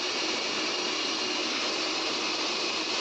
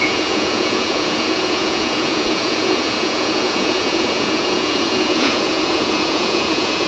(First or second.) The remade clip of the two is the second